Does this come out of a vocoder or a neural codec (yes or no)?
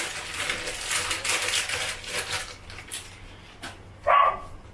no